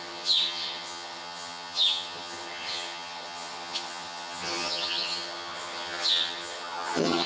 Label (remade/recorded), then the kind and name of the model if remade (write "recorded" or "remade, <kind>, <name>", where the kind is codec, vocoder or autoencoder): remade, vocoder, HiFi-GAN